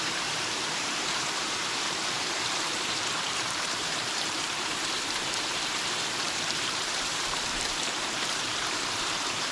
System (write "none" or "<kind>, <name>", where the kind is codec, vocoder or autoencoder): vocoder, BigVGAN v2